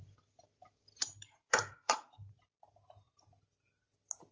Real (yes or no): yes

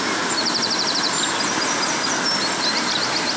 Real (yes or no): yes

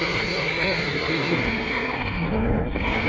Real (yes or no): no